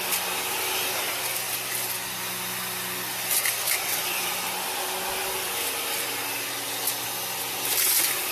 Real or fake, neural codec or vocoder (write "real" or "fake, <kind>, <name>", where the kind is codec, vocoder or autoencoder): real